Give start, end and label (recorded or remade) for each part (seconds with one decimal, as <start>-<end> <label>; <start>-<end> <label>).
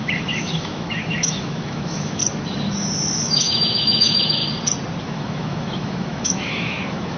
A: 0.0-2.2 remade; 2.2-3.1 recorded; 3.1-4.4 remade; 4.4-5.0 recorded; 5.0-7.2 remade